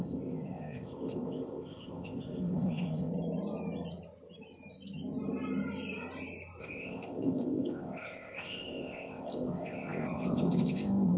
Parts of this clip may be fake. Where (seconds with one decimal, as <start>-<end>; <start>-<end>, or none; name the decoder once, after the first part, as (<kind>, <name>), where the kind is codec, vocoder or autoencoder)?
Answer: 0.0-3.1 (codec, ZipCodec); 6.6-11.2